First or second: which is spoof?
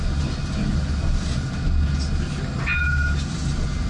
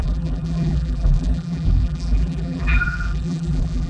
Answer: second